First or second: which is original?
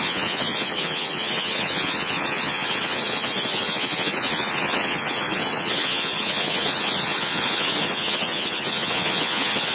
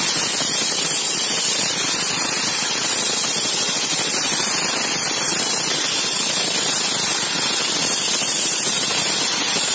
second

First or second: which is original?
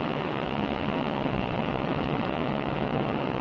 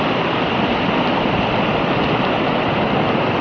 second